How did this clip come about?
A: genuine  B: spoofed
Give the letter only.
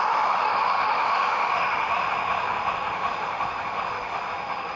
B